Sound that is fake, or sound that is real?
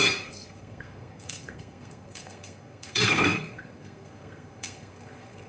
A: fake